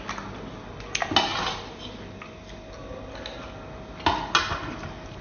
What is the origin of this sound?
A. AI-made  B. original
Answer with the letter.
B